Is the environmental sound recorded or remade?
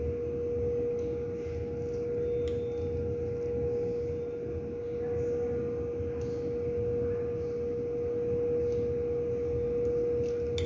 recorded